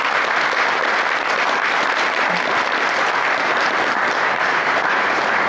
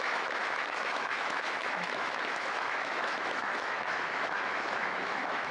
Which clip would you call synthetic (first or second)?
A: second